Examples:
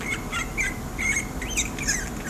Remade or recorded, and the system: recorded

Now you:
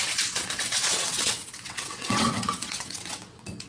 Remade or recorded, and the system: remade, vocoder, WaveNeXt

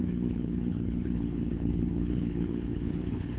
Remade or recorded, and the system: remade, codec, HILCodec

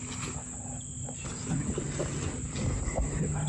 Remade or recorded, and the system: recorded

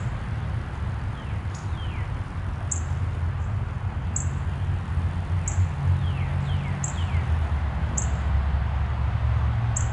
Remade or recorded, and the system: recorded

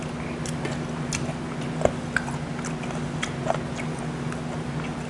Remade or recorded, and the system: recorded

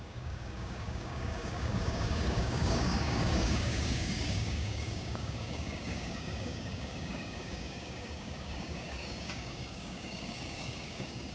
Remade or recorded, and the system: remade, codec, DAC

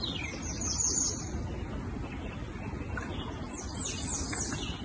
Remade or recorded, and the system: recorded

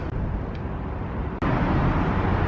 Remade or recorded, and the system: recorded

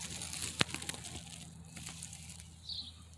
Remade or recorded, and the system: recorded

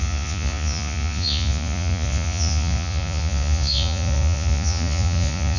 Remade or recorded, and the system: remade, vocoder, Vocos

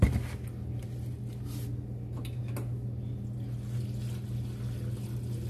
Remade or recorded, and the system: recorded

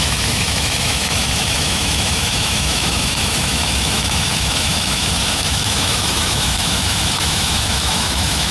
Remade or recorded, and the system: remade, autoencoder, DAC-VAE